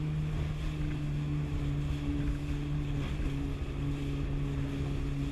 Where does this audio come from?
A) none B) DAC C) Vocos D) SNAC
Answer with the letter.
A